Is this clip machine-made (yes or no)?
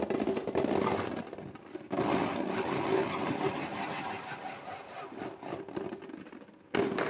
no